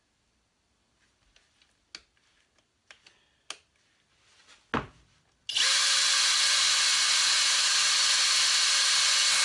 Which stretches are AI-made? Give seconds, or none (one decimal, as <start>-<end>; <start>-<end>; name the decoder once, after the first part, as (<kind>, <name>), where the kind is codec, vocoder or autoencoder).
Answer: none